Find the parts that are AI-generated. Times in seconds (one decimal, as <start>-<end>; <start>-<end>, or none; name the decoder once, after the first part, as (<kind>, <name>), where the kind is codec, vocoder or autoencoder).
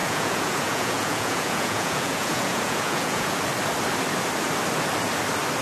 0.0-3.4 (vocoder, Vocos)